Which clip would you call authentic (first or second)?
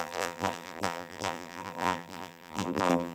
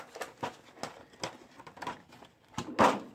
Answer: second